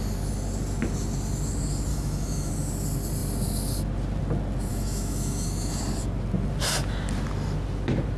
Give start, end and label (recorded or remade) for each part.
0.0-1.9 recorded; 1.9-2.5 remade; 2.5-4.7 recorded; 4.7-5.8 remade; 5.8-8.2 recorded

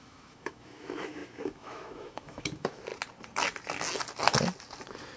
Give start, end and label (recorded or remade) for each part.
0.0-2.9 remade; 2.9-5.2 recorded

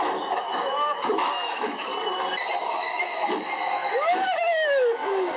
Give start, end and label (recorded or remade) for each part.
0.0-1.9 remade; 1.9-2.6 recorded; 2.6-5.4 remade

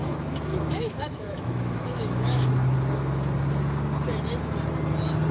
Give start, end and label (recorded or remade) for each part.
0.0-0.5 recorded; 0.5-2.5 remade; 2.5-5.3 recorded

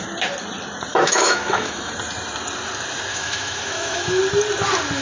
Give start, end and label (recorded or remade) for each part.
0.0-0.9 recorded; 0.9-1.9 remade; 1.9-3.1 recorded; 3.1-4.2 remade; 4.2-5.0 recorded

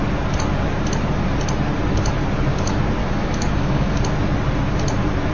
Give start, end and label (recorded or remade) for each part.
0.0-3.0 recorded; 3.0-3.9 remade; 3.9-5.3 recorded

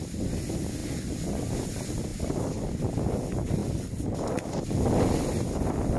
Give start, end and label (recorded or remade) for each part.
0.0-6.0 recorded